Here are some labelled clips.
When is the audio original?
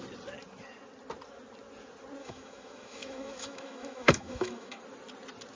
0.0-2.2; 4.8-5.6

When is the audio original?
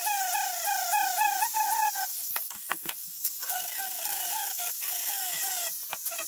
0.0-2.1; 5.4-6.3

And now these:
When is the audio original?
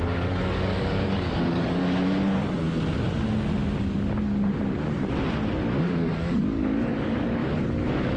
1.8-5.8; 7.4-8.2